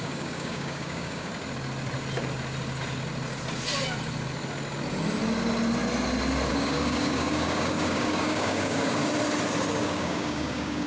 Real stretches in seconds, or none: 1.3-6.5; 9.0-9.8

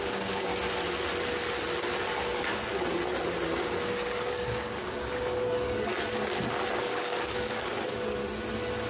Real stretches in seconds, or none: 0.5-3.9; 5.9-6.8; 8.2-8.9

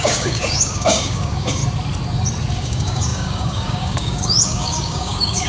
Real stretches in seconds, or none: 1.6-2.5

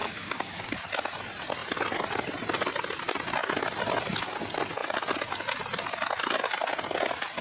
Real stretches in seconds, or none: 0.8-7.4

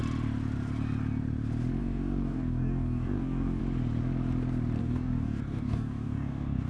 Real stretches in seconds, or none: 0.0-1.8; 3.6-4.8

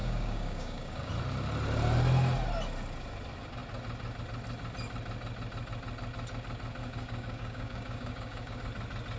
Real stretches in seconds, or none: 1.1-6.8; 8.6-9.2

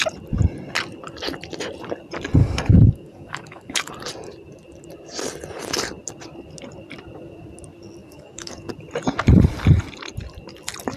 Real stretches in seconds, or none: 0.0-2.4; 3.9-8.0; 8.7-11.0